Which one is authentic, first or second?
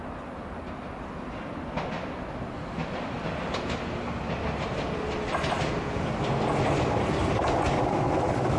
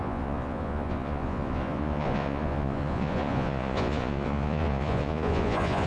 first